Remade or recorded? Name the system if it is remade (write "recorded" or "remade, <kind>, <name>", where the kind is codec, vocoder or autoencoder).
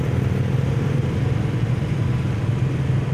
recorded